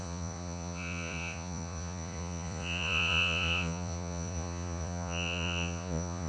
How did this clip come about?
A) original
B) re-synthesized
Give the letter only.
B